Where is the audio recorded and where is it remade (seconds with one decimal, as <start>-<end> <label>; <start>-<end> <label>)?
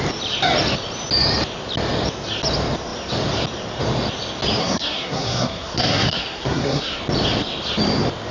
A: 0.0-4.6 recorded; 4.6-7.0 remade; 7.0-8.3 recorded